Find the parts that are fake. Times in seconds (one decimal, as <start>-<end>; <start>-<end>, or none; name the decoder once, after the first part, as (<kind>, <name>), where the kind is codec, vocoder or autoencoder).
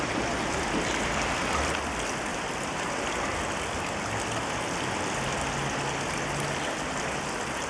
2.3-3.0 (vocoder, BigVGAN v2)